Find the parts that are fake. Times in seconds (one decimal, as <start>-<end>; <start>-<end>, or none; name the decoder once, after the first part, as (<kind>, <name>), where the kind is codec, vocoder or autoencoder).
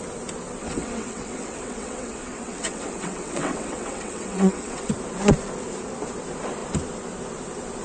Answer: 0.6-4.9 (vocoder, WaveNeXt)